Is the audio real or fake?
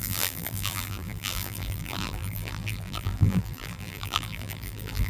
fake